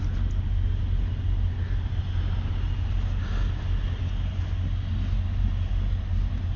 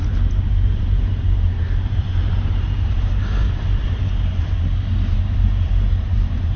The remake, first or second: second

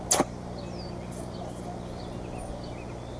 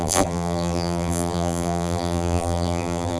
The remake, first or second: second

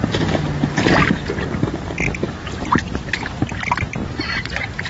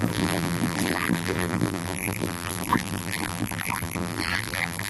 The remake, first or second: second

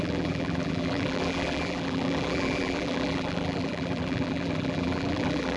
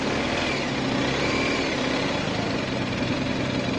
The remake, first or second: first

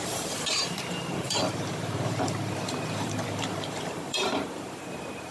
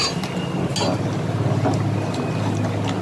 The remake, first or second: first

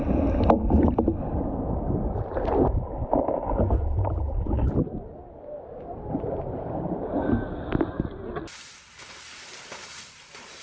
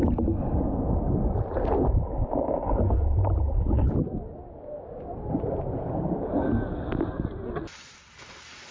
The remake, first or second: first